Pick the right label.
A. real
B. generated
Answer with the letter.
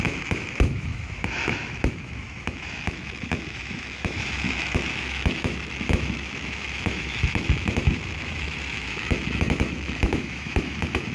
B